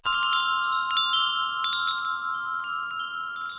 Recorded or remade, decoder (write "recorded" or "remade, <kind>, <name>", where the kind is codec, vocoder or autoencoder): recorded